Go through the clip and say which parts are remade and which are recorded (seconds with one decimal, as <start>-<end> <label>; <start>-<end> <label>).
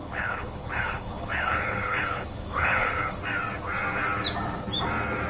0.0-3.2 remade; 3.2-5.3 recorded